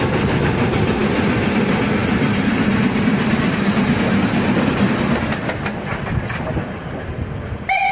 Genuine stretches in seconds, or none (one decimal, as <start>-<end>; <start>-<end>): 0.0-7.9